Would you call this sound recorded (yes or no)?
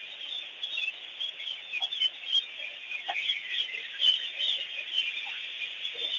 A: no